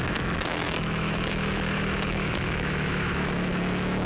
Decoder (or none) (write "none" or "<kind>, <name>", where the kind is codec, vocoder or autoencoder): autoencoder, DAC-VAE